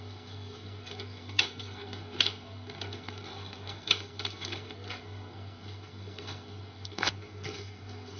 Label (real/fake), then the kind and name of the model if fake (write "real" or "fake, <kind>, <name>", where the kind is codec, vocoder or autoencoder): fake, codec, SNAC